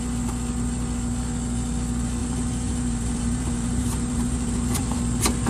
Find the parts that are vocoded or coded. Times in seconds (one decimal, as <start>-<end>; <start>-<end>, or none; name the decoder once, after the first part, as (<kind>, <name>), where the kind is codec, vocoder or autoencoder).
2.2-5.0 (vocoder, BigVGAN v2)